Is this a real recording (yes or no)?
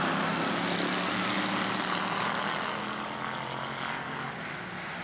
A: yes